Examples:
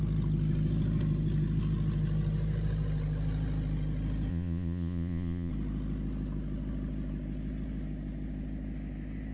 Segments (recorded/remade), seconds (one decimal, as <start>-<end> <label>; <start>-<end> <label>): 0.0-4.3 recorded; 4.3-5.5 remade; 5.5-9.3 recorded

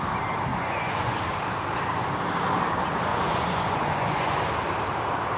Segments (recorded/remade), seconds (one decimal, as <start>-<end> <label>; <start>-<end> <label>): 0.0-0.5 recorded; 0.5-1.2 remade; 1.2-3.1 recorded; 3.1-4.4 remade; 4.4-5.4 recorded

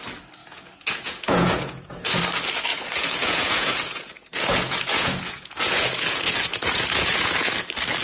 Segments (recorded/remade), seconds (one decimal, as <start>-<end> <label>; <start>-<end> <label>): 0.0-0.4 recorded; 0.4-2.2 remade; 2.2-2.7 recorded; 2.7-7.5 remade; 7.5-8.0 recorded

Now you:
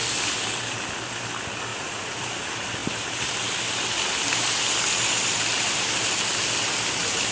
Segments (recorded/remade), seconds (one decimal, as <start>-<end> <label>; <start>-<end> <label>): 0.0-1.7 recorded; 1.7-2.3 remade; 2.3-7.3 recorded

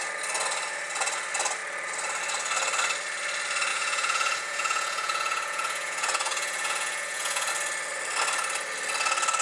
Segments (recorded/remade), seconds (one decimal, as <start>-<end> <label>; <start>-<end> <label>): 0.0-3.7 recorded; 3.7-7.5 remade; 7.5-9.4 recorded

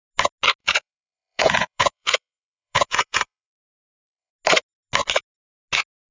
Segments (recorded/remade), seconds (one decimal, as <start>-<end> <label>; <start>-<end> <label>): 0.0-0.6 recorded; 0.6-4.3 remade; 4.3-6.1 recorded

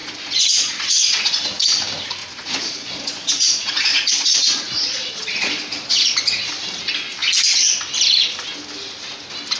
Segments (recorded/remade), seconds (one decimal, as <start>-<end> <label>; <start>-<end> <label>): 0.0-1.2 remade; 1.2-2.2 recorded; 2.2-6.5 remade; 6.5-9.6 recorded

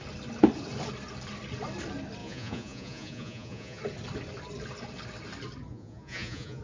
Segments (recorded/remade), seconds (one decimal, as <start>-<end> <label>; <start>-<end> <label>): 0.0-2.2 recorded; 2.2-3.8 remade; 3.8-5.7 recorded; 5.7-6.6 remade